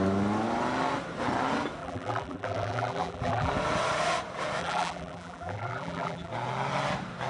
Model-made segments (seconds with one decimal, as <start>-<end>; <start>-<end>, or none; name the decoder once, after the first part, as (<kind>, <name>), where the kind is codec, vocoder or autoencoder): 1.8-3.5 (vocoder, BigVGAN v2); 4.6-6.3